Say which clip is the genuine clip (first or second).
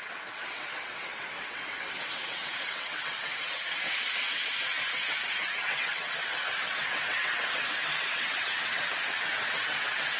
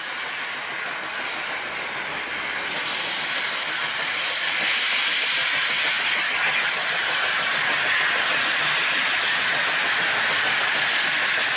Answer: second